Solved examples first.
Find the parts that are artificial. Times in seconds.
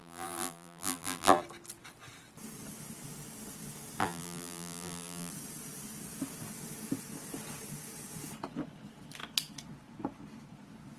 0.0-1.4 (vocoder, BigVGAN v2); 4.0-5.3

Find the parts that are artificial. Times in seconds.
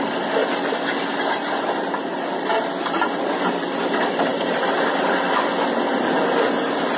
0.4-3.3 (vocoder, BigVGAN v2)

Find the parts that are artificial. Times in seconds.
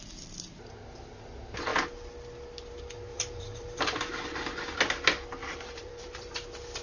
3.1-3.8 (vocoder, BigVGAN v2); 5.4-6.3